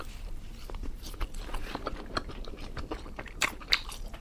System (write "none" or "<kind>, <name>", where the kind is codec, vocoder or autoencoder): vocoder, BigVGAN v2